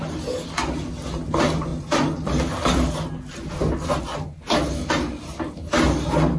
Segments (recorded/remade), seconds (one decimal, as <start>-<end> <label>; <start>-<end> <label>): 0.0-6.4 recorded